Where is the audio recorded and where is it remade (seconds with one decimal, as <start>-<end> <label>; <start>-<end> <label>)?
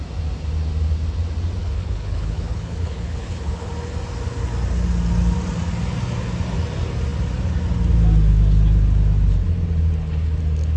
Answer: 0.0-1.6 recorded; 1.6-3.7 remade; 3.7-10.8 recorded